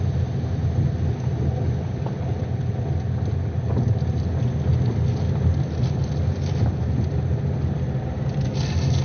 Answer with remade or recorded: recorded